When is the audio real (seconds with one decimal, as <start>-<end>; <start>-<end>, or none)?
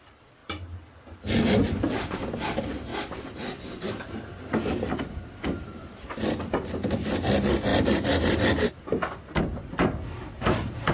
0.0-10.9